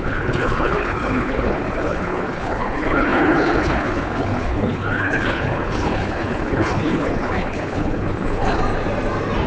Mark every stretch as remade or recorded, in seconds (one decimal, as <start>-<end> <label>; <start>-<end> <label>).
0.0-8.6 remade; 8.6-9.5 recorded